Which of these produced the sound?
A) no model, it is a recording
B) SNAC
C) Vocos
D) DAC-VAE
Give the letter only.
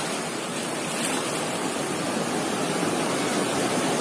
A